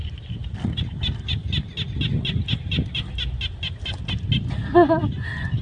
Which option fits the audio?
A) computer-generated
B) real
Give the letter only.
B